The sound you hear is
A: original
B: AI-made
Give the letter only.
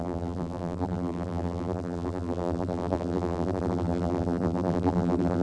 B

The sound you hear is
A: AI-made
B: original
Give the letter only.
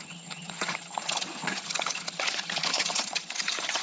A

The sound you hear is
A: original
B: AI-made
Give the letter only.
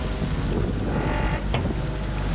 A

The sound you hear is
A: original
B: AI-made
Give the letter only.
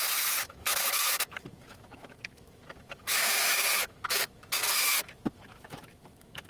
B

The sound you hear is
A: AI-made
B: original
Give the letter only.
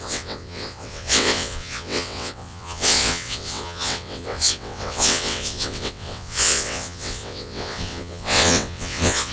A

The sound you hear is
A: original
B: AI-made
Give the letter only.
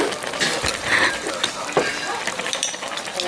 A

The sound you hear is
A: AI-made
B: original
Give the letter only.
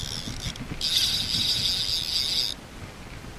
B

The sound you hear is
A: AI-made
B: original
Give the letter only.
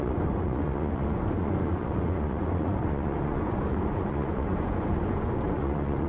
A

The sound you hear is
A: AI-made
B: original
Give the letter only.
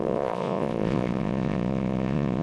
A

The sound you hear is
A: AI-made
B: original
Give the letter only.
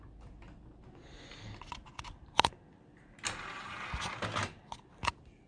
B